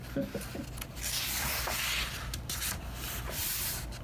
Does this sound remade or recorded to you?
recorded